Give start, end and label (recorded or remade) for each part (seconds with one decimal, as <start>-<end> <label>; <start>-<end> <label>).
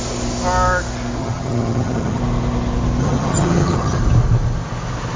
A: 0.0-1.2 recorded; 1.2-2.2 remade; 2.2-3.0 recorded; 3.0-4.0 remade; 4.0-5.2 recorded